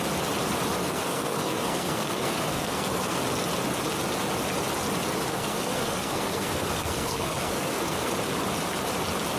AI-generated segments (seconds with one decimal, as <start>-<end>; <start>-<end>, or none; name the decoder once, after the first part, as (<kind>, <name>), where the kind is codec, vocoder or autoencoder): 0.8-3.2 (codec, SNAC); 5.3-8.1